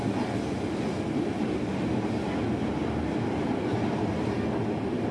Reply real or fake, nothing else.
real